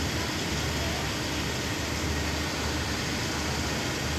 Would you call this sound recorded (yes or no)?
yes